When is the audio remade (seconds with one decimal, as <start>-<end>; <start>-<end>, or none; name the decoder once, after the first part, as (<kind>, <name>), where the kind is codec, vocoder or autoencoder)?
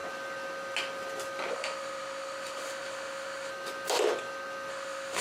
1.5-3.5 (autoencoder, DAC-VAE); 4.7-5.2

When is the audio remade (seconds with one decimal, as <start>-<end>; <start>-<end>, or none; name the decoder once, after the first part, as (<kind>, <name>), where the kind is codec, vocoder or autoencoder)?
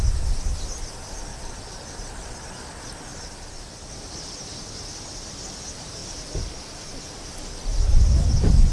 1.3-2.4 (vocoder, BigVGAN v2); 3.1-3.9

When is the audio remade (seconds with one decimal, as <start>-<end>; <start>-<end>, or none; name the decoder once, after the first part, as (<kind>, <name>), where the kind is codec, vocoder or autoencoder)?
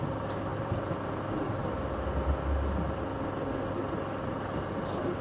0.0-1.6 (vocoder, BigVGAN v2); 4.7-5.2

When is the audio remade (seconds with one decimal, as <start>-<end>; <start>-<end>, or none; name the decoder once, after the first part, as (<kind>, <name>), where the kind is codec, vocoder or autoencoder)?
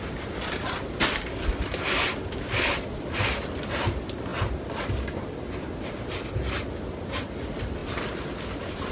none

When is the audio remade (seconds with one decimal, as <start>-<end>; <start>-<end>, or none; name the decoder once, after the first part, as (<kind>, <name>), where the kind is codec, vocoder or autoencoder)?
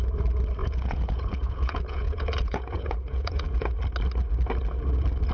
0.6-3.8 (vocoder, Vocos)